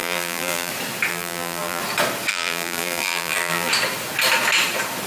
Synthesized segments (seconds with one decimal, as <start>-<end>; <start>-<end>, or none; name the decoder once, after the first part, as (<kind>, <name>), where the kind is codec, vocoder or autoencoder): 0.0-0.7 (vocoder, BigVGAN v2); 1.1-1.8; 2.3-3.7